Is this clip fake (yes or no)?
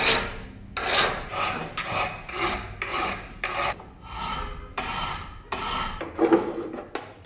no